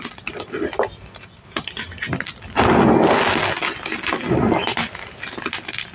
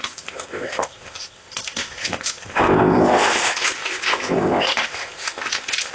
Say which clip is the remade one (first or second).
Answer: second